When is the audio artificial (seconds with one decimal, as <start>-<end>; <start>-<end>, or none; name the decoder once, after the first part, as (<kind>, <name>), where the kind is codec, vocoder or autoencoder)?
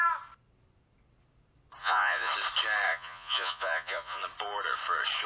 1.8-2.3 (vocoder, Vocos); 2.9-4.2